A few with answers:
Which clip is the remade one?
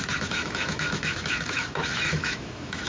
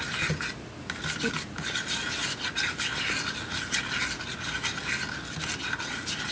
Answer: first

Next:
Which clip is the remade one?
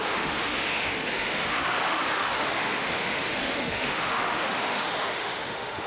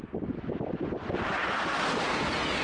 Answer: first